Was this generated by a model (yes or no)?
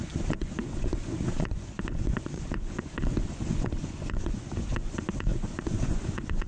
yes